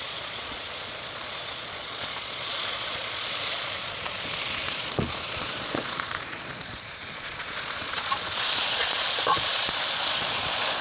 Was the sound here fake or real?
fake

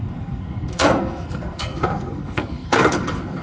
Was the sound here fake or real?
fake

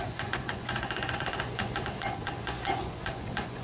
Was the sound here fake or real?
fake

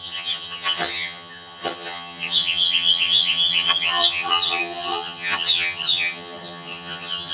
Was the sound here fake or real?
fake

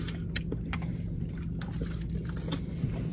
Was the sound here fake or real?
real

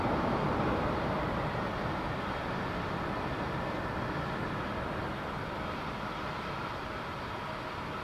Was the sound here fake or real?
real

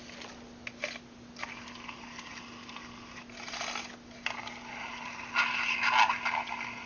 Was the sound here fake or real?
real